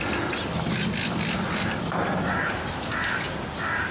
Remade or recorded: recorded